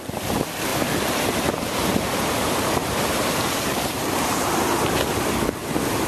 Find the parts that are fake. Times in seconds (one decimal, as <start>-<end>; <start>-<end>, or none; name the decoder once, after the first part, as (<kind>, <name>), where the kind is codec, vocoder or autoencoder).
0.7-4.4 (vocoder, BigVGAN v2)